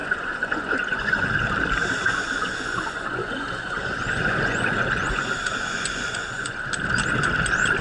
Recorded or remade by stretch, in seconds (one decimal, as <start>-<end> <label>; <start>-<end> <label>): 0.0-1.3 remade; 1.3-2.0 recorded; 2.0-6.6 remade; 6.6-7.8 recorded